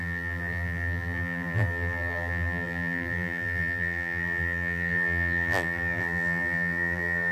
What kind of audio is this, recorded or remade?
remade